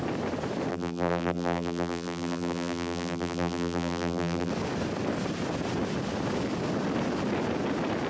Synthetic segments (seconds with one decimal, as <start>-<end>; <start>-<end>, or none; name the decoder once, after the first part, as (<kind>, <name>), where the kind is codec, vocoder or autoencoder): 0.7-4.5 (vocoder, BigVGAN v2)